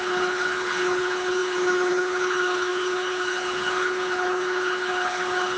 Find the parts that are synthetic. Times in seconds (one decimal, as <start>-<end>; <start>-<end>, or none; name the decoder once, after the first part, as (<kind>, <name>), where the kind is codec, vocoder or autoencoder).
0.0-5.6 (codec, HILCodec)